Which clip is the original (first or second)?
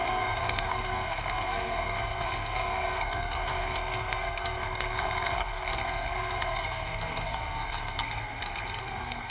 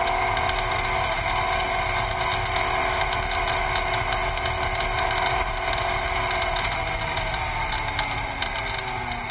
second